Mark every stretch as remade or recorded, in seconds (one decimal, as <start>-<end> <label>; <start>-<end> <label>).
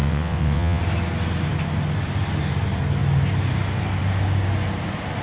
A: 0.0-0.8 remade; 0.8-5.2 recorded